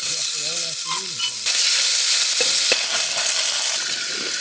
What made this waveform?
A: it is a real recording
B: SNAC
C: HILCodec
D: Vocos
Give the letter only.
A